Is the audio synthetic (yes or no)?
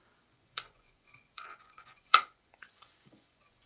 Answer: yes